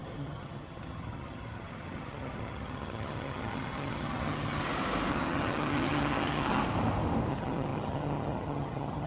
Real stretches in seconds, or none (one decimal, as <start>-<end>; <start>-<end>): 4.6-5.1; 6.6-7.3